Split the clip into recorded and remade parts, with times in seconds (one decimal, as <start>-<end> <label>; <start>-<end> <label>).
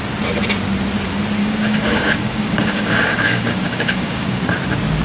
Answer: 0.0-1.4 recorded; 1.4-4.4 remade; 4.4-5.0 recorded